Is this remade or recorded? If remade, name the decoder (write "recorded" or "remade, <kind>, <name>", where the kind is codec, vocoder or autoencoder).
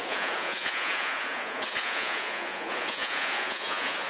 remade, vocoder, Vocos